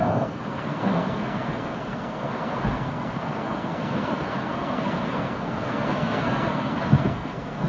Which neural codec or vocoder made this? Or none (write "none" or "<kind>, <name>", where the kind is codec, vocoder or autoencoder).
codec, SNAC